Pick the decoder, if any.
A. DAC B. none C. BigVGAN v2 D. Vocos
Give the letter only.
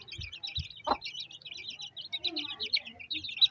B